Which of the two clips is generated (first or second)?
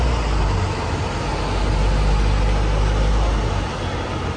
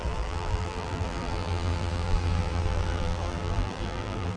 second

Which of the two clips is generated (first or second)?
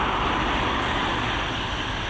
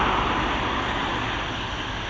first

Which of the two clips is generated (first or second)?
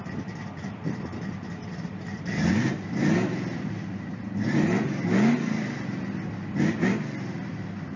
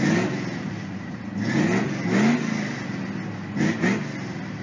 first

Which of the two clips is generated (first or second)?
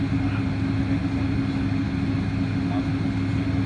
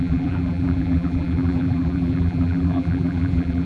second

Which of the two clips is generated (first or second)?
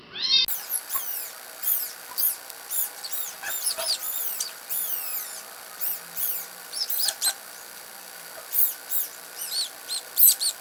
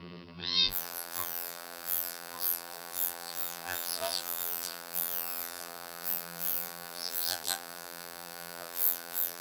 second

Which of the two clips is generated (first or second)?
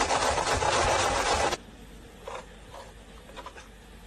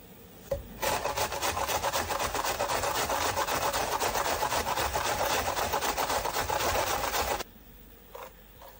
first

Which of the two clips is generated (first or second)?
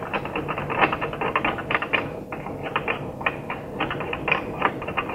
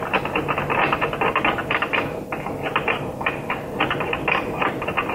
first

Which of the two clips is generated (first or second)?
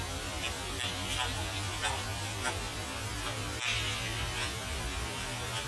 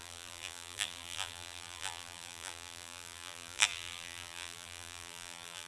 second